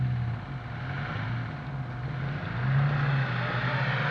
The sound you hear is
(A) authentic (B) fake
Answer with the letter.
A